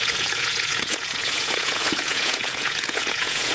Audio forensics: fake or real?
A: fake